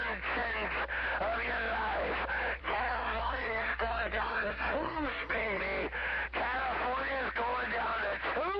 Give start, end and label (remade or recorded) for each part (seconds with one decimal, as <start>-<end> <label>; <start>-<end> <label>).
0.0-2.6 recorded; 2.6-5.6 remade; 5.6-8.6 recorded